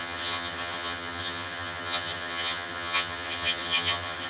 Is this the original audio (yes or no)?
no